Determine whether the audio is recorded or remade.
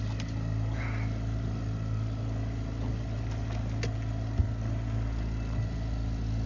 recorded